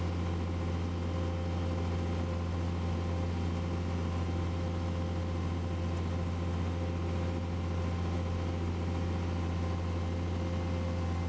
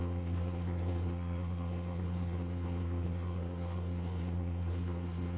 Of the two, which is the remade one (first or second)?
second